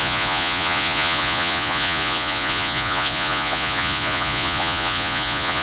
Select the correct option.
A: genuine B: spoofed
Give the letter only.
B